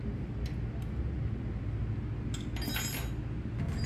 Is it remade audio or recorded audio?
recorded